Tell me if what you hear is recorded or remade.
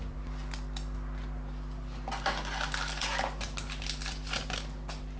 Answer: recorded